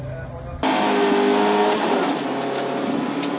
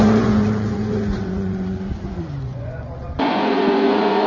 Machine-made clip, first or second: second